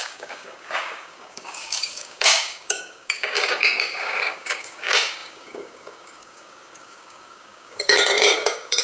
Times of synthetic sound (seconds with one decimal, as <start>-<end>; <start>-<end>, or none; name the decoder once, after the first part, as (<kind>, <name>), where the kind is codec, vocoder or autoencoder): 0.0-8.8 (codec, DAC)